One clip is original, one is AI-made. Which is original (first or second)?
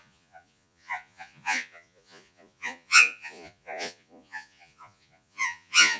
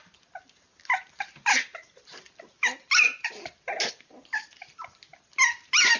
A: second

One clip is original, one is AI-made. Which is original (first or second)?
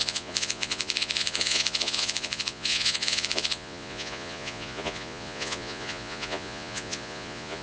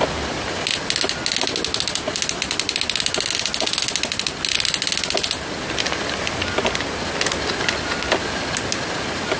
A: second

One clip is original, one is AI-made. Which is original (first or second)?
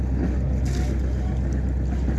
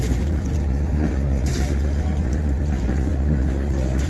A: first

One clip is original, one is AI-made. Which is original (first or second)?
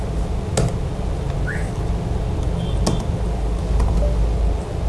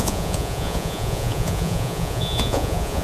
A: first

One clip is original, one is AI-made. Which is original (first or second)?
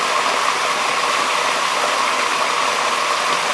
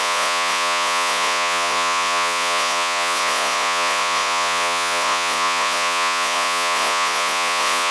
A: first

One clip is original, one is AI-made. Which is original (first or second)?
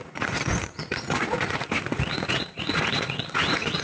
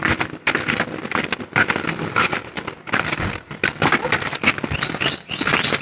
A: second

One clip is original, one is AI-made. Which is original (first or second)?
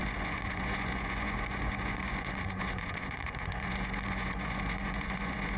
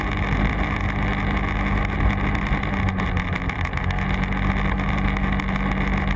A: second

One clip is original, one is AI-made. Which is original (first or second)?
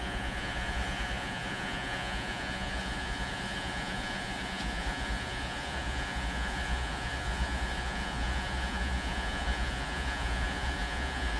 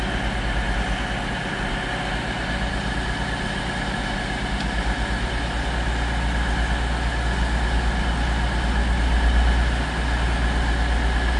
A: second